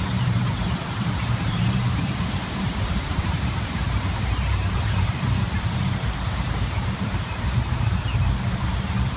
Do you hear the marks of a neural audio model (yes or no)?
yes